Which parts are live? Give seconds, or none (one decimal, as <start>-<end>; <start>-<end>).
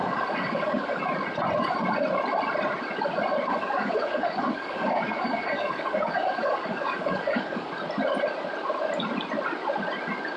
1.0-3.5; 7.7-10.4